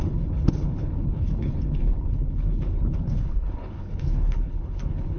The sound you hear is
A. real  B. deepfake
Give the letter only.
B